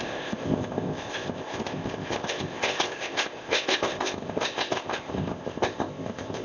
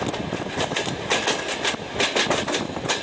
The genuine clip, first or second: second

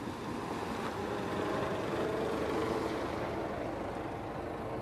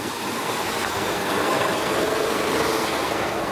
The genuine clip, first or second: first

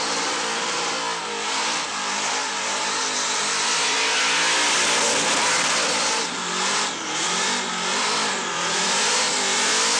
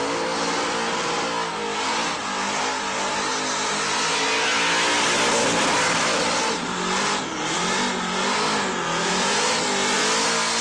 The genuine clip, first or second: second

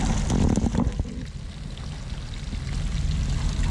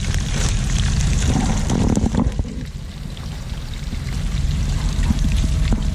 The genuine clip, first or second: first